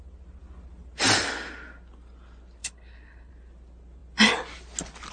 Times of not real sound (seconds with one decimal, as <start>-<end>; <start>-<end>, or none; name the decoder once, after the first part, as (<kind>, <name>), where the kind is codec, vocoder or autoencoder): 2.6-3.3 (codec, HILCodec)